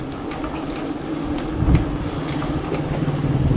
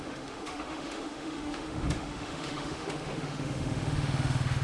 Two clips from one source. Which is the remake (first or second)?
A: second